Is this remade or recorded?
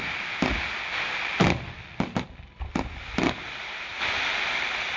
recorded